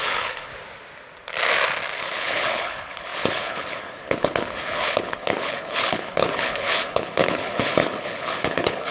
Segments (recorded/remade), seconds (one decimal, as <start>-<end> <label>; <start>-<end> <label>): 0.0-0.5 remade; 0.5-2.0 recorded; 2.0-8.9 remade